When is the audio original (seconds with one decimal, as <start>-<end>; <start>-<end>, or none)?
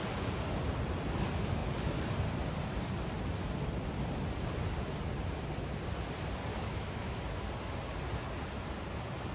0.0-6.5; 7.2-9.3